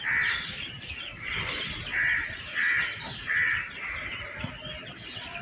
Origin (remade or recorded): recorded